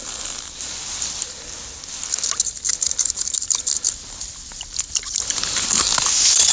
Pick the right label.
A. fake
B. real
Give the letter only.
B